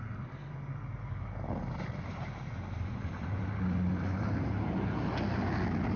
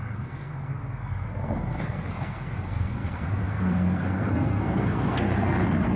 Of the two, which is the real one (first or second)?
first